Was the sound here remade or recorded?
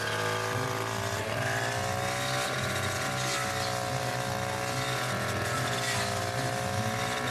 recorded